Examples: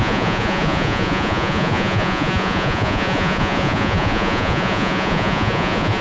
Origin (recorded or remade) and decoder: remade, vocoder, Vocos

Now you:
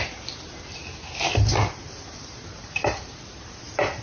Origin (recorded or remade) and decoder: recorded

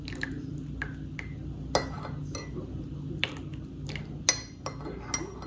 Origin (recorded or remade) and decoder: recorded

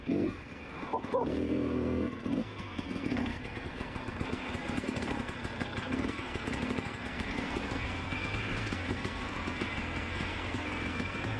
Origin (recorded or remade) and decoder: remade, codec, SNAC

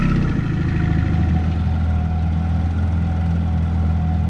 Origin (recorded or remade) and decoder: recorded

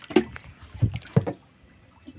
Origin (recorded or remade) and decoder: recorded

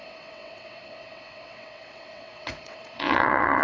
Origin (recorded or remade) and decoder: remade, vocoder, WaveNeXt